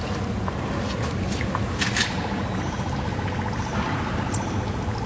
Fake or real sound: real